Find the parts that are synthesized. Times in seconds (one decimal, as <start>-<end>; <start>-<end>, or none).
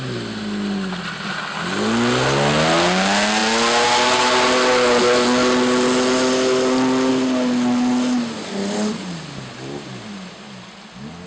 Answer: none